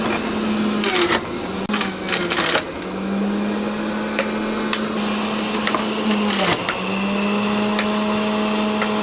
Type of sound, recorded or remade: recorded